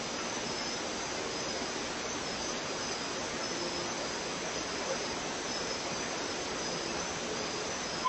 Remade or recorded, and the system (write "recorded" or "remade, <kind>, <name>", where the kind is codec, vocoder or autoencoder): recorded